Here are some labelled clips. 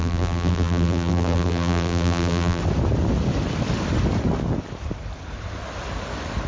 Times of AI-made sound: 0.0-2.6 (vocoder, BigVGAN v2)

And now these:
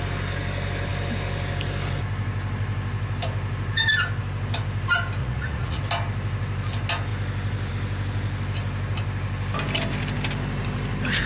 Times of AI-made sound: 5.2-5.8 (vocoder, Vocos)

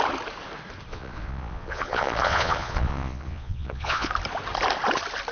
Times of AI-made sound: 0.9-4.1 (vocoder, Vocos)

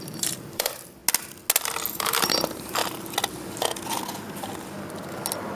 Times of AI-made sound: 0.0-1.0 (vocoder, BigVGAN v2); 1.9-2.8